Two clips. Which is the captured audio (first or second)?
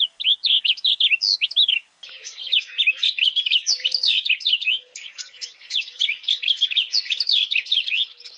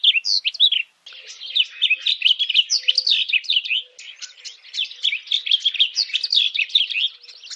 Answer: second